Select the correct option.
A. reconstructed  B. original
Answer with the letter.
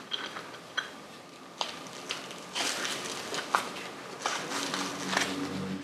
B